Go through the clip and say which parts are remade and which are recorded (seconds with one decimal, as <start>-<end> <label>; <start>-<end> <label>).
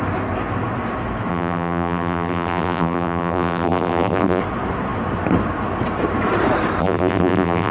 0.0-1.3 recorded; 1.3-4.4 remade; 4.4-6.8 recorded; 6.8-7.7 remade